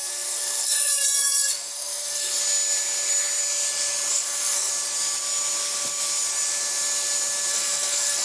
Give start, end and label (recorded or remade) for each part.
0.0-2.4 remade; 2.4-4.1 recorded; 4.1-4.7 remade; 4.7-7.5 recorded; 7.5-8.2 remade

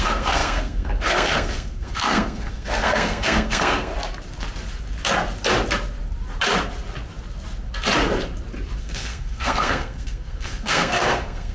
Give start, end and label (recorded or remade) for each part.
0.0-3.9 remade; 3.9-8.8 recorded; 8.8-11.5 remade

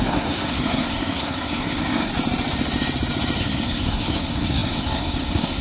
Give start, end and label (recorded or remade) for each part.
0.0-2.1 remade; 2.1-3.4 recorded; 3.4-5.6 remade

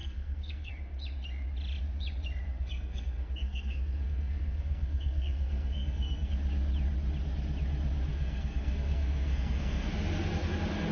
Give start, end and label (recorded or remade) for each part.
0.0-0.7 remade; 0.7-2.5 recorded; 2.5-6.3 remade; 6.3-8.1 recorded; 8.1-9.9 remade; 9.9-10.9 recorded

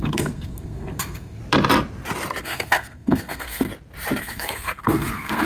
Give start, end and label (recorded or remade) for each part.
0.0-1.4 remade; 1.4-2.4 recorded; 2.4-3.7 remade; 3.7-4.2 recorded; 4.2-5.5 remade

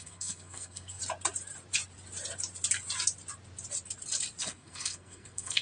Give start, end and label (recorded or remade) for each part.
0.0-1.0 remade; 1.0-4.4 recorded; 4.4-5.6 remade

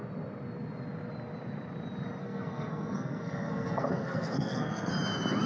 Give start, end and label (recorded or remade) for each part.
0.0-2.2 recorded; 2.2-4.9 remade; 4.9-5.5 recorded